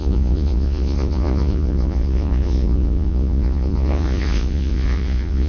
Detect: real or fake fake